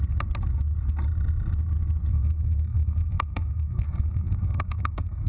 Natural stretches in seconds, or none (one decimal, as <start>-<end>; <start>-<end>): 0.0-2.1